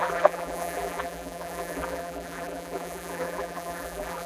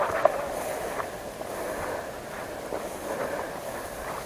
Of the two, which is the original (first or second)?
second